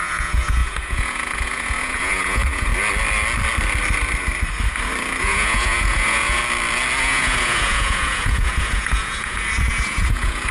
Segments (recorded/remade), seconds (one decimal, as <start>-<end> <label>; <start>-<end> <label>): 0.0-2.7 remade; 2.7-5.2 recorded; 5.2-6.4 remade; 6.4-7.0 recorded; 7.0-10.5 remade